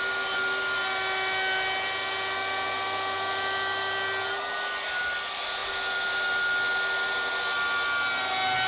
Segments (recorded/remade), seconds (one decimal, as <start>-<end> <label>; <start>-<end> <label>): 0.0-8.7 recorded